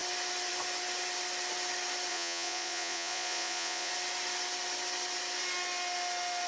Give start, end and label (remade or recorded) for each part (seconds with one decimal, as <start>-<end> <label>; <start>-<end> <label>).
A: 0.0-2.1 recorded; 2.1-3.9 remade; 3.9-6.5 recorded